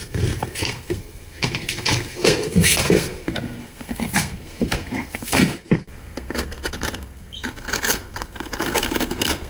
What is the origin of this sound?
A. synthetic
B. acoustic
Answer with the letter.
A